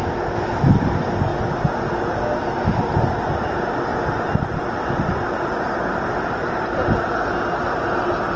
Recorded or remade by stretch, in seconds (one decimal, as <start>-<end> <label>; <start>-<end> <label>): 0.0-3.9 recorded; 3.9-8.4 remade